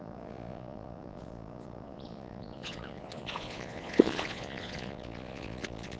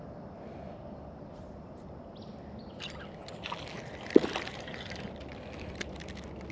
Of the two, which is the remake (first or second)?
first